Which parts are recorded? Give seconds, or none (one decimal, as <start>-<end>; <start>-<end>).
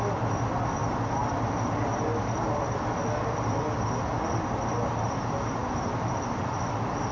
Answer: 0.0-7.1